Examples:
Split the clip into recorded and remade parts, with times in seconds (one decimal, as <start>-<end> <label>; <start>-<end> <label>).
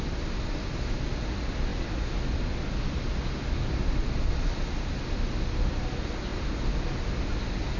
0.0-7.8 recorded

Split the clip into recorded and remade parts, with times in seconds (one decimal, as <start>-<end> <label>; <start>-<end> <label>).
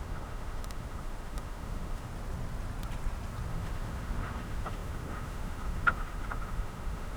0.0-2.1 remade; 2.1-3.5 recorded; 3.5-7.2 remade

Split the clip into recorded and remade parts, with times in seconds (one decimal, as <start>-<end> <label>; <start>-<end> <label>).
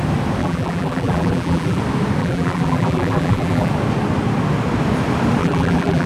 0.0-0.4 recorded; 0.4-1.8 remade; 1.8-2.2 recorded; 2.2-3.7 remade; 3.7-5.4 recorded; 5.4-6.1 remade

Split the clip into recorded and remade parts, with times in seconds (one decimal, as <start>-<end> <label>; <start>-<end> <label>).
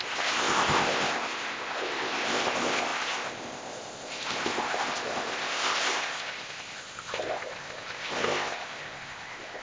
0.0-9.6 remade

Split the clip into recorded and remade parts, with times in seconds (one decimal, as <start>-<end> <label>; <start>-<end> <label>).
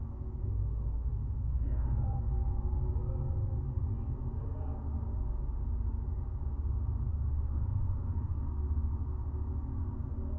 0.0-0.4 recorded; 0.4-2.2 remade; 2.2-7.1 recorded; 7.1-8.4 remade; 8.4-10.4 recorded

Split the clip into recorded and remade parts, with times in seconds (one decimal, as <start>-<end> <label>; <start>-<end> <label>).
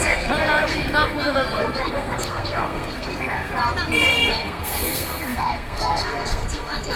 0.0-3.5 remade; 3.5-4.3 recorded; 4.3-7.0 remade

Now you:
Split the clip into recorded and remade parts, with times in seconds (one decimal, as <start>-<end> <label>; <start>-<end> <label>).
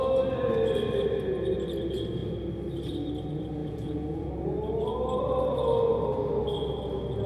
0.0-3.6 recorded; 3.6-4.3 remade; 4.3-7.3 recorded